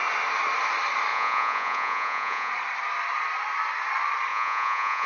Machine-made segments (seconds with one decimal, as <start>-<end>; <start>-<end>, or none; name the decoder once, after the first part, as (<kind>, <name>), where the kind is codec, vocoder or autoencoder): 1.1-2.5 (vocoder, Vocos); 4.3-5.1

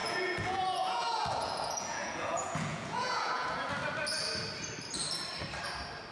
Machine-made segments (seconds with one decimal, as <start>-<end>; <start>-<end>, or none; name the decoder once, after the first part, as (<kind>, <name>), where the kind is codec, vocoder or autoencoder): 0.0-3.7 (vocoder, Vocos)